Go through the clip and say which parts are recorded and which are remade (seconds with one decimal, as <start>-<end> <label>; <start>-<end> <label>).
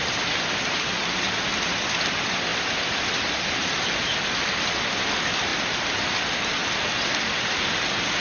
0.0-8.2 recorded